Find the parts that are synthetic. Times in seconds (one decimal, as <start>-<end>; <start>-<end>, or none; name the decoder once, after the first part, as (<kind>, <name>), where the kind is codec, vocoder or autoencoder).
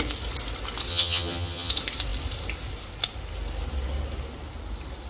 0.9-1.7 (vocoder, HiFi-GAN)